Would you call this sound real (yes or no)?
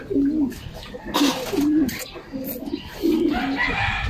yes